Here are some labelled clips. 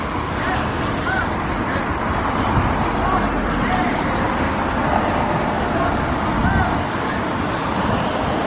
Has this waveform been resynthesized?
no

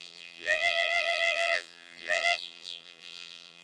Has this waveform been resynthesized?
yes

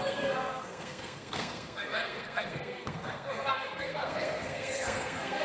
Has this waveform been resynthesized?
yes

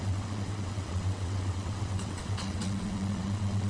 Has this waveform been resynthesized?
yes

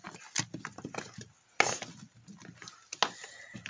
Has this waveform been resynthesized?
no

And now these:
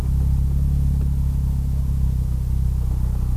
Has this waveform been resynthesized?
no